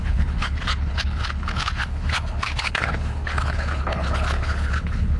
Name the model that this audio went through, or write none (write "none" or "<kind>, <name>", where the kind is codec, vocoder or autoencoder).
codec, HILCodec